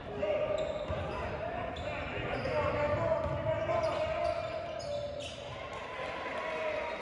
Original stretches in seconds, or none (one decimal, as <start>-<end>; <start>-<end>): 0.0-7.0

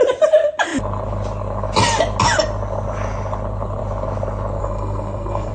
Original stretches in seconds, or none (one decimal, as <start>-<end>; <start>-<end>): 0.0-4.6